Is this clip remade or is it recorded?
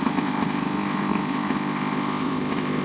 remade